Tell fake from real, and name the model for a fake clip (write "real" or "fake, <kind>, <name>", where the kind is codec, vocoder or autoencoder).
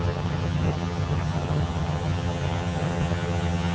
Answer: fake, vocoder, HiFi-GAN